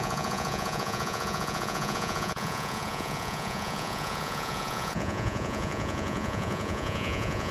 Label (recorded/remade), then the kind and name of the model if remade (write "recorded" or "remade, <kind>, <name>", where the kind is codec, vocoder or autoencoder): remade, vocoder, Vocos